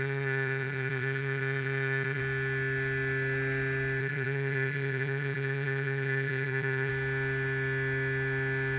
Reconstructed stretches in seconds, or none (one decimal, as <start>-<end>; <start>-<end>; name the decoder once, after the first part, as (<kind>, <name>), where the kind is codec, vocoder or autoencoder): 0.0-2.2 (vocoder, HiFi-GAN); 4.0-6.9